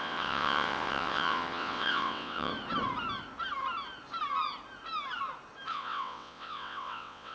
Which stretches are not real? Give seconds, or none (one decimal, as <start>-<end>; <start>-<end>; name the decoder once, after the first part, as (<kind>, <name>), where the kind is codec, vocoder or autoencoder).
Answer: 0.0-2.5 (vocoder, WaveNeXt); 5.7-7.3